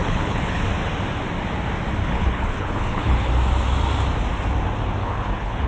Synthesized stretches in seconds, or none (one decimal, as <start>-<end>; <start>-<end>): 0.0-0.6; 2.0-3.3; 5.0-5.7